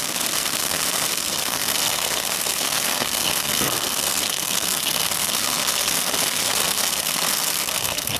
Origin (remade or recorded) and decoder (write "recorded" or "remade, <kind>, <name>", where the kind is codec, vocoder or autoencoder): remade, codec, SNAC